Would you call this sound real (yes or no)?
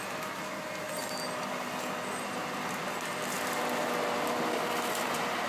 yes